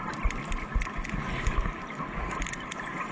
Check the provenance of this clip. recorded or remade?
remade